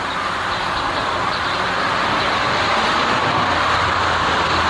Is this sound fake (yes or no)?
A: no